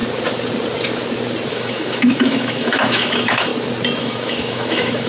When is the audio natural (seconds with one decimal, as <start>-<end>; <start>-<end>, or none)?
0.0-1.5; 3.5-4.0